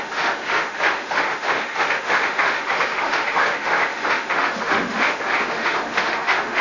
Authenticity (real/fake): fake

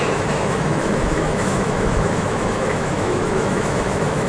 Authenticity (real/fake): fake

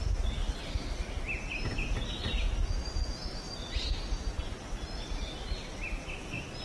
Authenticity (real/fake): real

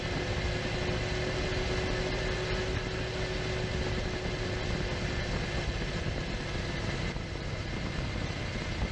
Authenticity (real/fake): real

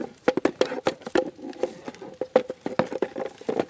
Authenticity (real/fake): real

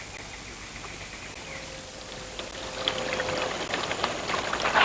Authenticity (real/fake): real